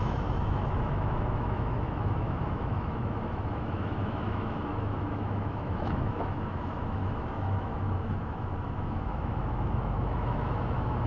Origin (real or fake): fake